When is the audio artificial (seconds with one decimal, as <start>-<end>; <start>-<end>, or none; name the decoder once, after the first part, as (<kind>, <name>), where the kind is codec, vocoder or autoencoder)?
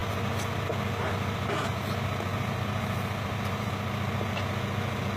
2.3-3.7 (vocoder, BigVGAN v2)